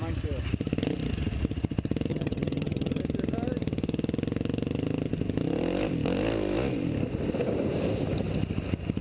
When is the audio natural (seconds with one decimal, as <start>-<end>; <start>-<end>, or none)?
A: 0.0-2.1; 3.0-9.0